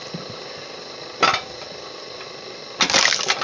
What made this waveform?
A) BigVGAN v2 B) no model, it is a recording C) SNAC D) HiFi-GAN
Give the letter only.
B